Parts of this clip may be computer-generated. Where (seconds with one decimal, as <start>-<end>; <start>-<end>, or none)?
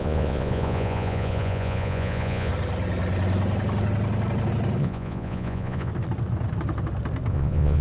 0.0-2.5; 4.8-5.9; 7.3-7.8